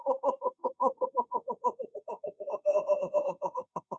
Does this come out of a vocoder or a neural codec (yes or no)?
yes